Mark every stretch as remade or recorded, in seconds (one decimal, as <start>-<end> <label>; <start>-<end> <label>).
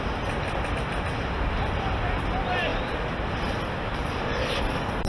0.0-5.1 recorded